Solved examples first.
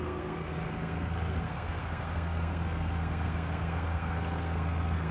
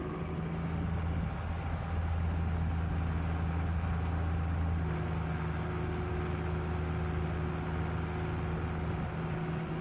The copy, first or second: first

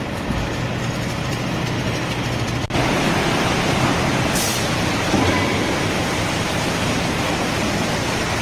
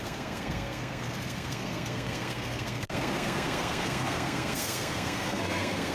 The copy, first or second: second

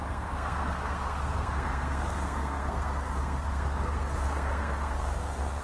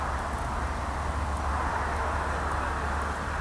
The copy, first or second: first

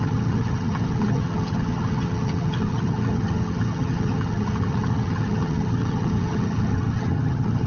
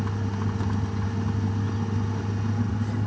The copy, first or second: first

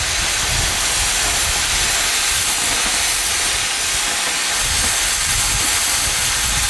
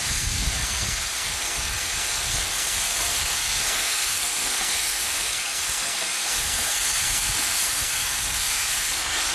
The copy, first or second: second